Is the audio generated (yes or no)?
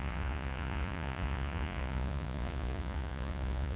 yes